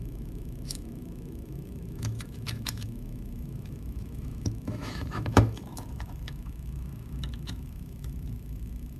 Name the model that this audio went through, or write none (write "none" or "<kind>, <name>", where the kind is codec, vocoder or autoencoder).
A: autoencoder, DAC-VAE